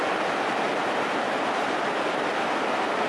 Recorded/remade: recorded